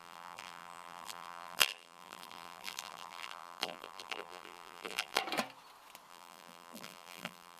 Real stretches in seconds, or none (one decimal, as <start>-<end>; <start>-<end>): 5.2-6.1